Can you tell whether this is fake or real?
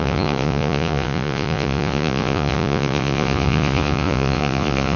fake